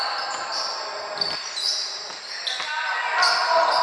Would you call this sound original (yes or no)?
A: yes